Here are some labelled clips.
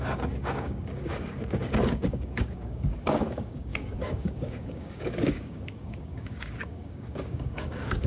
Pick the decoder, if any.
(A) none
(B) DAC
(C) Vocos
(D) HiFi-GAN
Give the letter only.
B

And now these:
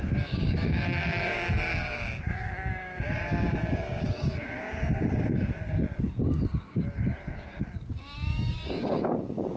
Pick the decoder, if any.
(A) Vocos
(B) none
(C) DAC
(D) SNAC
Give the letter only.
C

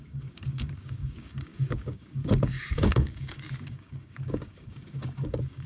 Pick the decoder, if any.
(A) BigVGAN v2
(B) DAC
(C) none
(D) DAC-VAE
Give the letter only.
B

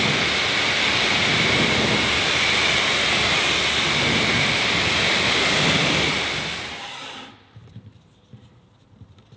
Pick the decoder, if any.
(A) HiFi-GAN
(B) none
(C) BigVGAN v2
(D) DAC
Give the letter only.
B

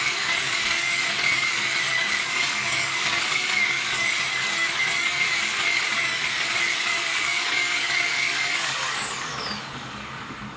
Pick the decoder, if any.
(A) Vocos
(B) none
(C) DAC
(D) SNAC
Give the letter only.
C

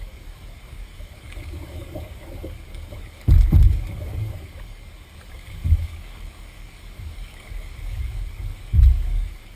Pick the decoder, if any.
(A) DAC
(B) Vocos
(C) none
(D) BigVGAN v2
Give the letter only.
A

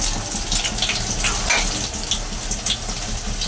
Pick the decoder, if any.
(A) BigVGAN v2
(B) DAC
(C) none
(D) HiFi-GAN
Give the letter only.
C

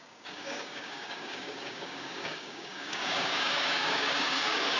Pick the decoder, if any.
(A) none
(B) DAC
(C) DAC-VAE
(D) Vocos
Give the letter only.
B